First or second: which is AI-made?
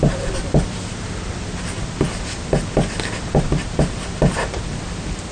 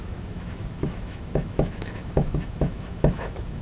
second